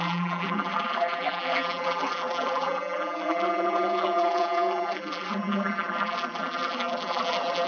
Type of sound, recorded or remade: remade